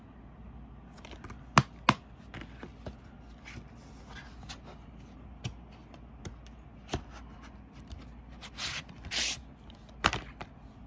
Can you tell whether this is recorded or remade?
recorded